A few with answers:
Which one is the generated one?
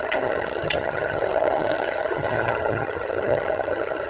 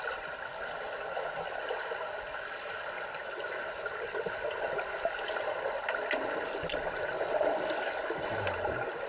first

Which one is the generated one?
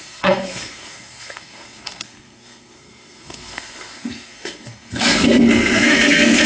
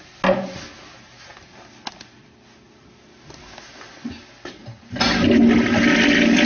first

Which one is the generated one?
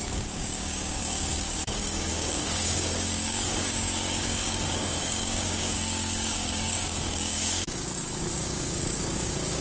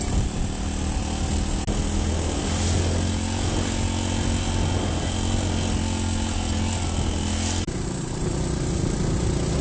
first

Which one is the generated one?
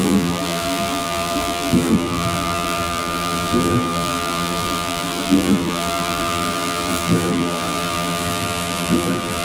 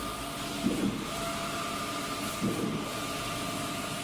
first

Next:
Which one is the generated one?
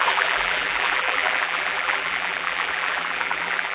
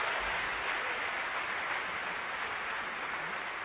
first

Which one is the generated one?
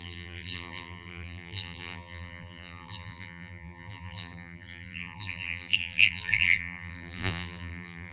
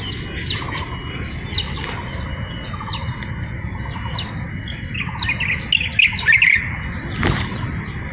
first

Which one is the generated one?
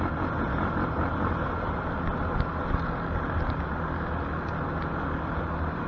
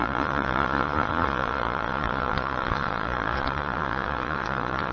second